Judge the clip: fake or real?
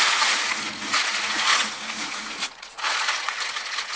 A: fake